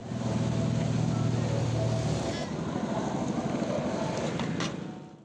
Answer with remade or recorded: recorded